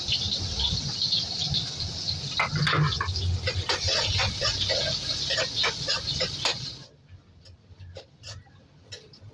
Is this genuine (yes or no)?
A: yes